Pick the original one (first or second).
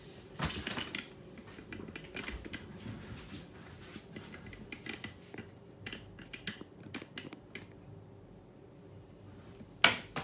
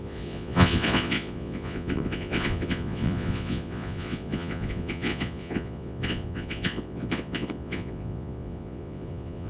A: first